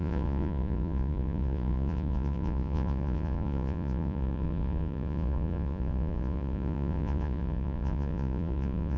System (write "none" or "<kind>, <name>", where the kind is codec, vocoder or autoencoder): vocoder, Vocos